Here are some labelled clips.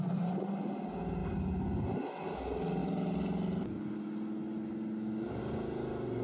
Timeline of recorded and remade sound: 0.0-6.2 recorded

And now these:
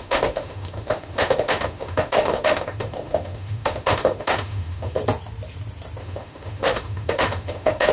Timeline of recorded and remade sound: 0.0-5.0 remade; 5.0-6.0 recorded; 6.0-7.9 remade